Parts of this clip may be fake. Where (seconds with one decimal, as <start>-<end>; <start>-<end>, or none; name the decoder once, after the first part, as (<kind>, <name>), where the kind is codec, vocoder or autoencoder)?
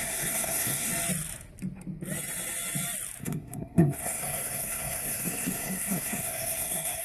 0.0-0.9 (codec, SNAC); 3.2-7.0